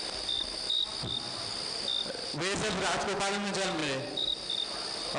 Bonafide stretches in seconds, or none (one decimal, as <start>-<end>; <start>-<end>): 0.0-5.2